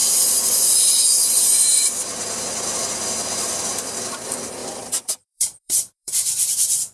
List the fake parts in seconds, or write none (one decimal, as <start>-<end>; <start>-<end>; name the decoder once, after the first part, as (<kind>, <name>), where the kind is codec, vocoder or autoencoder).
0.0-4.0 (vocoder, BigVGAN v2); 4.6-6.1